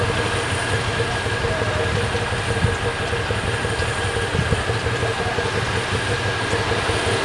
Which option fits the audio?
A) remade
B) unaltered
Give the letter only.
B